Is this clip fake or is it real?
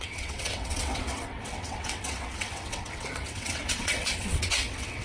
fake